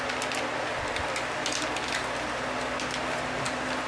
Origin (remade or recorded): recorded